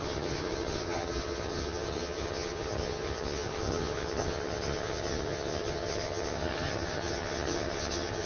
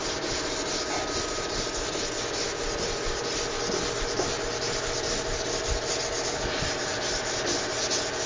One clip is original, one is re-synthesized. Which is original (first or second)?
second